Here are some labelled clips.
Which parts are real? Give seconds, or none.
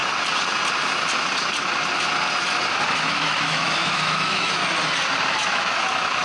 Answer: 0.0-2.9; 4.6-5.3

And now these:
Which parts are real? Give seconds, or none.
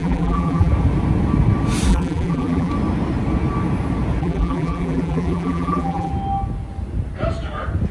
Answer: 0.7-1.9; 2.7-4.2; 6.1-7.9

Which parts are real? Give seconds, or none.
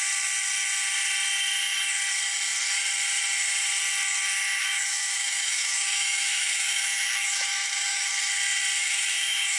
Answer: 0.0-4.6; 8.1-8.8